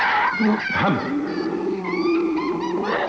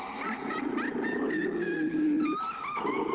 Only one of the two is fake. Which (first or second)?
first